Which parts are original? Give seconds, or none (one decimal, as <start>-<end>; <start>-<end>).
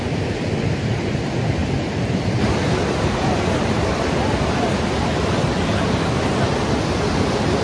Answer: 0.0-7.6